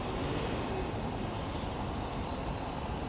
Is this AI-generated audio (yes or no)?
no